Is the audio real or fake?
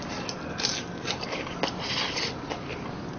real